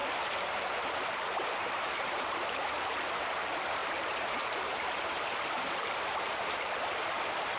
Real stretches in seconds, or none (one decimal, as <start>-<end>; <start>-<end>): none